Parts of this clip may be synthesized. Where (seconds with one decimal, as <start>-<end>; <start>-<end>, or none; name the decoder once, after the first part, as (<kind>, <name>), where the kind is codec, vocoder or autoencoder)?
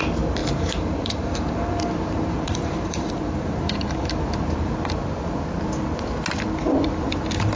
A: 0.4-4.7 (vocoder, BigVGAN v2)